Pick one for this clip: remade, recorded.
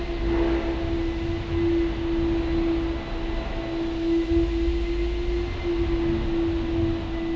recorded